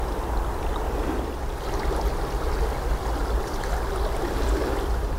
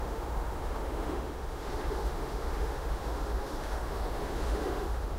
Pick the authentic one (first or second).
first